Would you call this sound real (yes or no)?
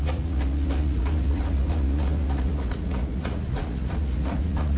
no